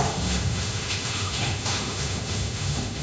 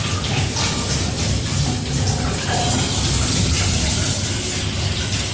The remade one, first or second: first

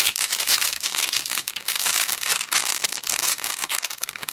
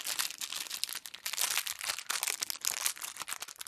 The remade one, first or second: first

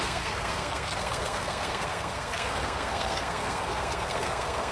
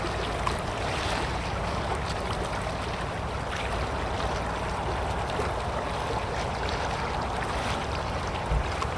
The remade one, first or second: first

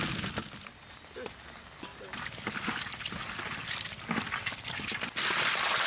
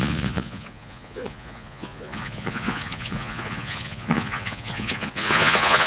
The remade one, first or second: second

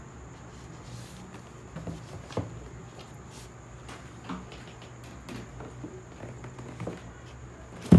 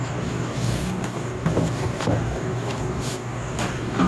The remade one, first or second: second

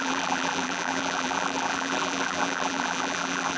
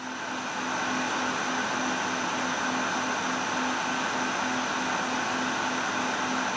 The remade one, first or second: first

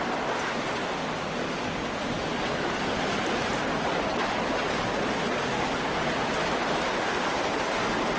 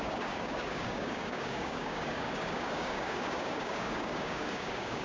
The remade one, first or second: second